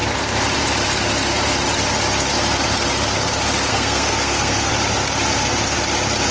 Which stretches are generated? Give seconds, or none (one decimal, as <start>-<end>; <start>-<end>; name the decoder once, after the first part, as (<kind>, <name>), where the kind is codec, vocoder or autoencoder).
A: 3.7-4.7 (codec, SNAC)